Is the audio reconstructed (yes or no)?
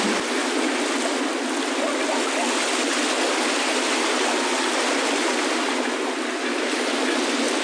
no